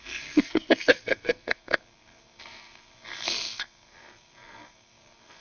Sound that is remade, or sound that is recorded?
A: remade